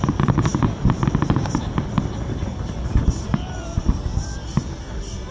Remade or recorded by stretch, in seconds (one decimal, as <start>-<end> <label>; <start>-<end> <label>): 0.0-5.3 recorded